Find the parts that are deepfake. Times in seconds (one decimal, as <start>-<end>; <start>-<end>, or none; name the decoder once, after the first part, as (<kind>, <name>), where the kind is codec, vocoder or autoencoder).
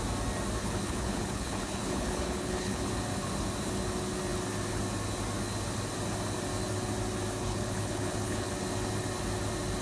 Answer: 0.6-2.9 (codec, HILCodec); 7.4-8.5